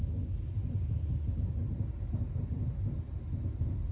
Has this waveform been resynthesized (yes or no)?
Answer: no